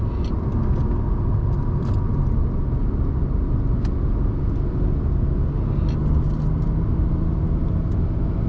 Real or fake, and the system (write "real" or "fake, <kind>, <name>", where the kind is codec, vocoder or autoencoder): real